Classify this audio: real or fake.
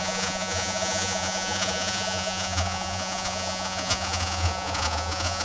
fake